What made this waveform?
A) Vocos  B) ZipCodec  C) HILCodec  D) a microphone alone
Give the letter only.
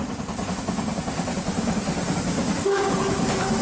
D